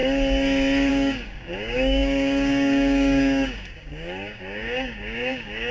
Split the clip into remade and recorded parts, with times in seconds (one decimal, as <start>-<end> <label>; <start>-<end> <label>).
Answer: 0.0-0.9 recorded; 0.9-5.7 remade